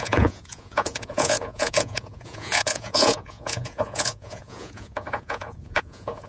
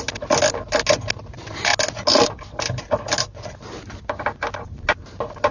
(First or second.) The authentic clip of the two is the second